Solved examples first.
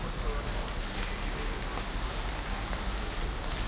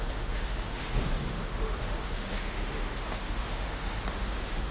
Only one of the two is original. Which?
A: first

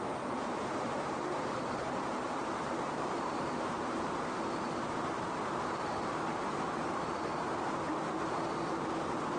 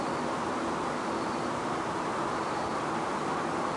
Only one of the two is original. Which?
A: second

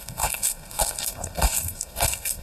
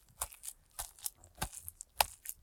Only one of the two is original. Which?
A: second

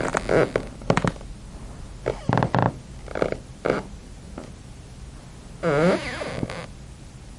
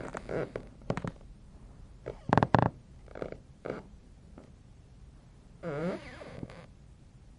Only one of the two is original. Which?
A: first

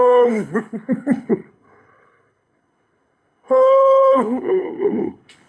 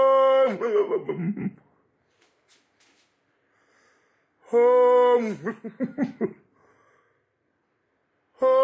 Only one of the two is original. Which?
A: second